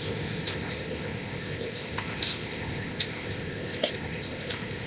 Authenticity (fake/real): fake